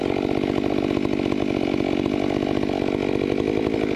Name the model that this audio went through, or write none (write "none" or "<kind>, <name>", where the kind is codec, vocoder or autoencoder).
none